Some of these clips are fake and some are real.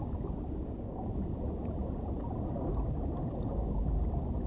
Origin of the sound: real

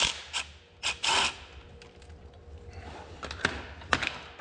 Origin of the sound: real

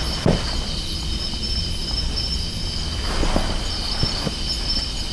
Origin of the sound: real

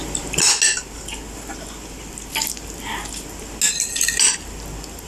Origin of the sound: real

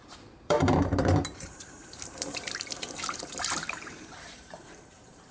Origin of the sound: fake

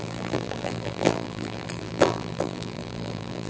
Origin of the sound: fake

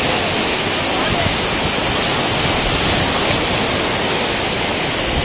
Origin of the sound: real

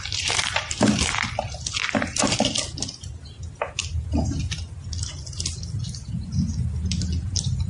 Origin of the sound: real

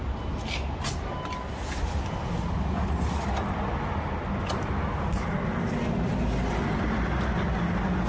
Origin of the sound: real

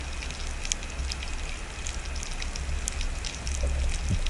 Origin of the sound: real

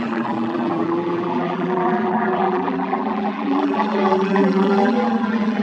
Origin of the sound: fake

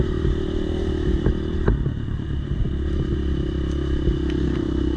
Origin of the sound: real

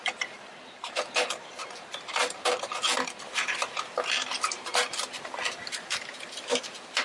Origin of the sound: fake